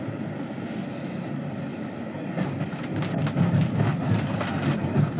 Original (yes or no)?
yes